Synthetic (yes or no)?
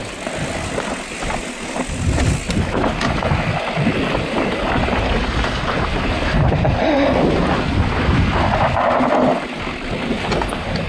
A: no